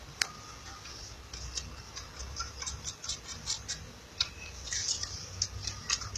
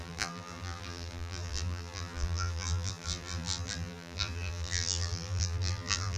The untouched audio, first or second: first